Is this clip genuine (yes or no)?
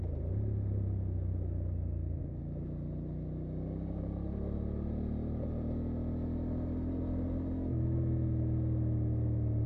yes